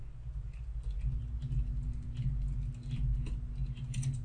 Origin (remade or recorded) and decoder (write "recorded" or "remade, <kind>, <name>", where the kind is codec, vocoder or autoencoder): recorded